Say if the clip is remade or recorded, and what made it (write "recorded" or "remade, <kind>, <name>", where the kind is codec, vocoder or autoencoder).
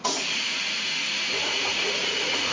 remade, vocoder, Vocos